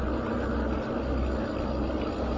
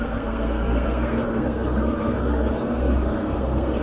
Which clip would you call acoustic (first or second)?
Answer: first